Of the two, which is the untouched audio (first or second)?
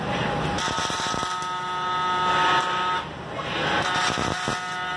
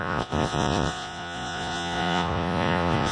first